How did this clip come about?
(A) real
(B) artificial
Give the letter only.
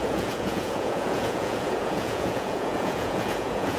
B